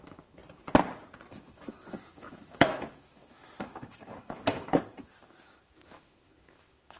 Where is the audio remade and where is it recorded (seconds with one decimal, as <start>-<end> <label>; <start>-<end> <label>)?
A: 0.0-0.4 remade; 0.4-1.3 recorded; 1.3-7.0 remade